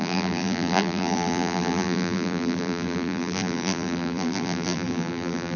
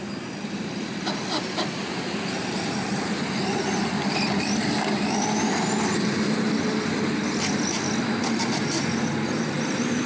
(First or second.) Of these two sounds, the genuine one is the second